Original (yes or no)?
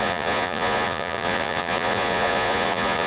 no